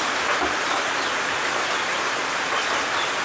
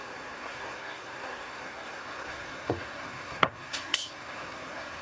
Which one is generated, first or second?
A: second